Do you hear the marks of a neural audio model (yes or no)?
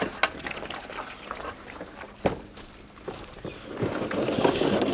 no